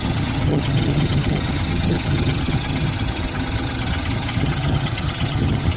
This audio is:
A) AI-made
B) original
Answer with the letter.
A